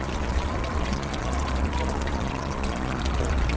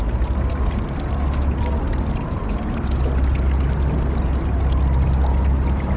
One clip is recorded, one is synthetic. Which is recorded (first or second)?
second